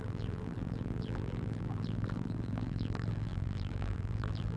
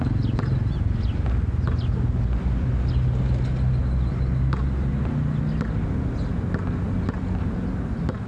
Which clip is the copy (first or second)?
first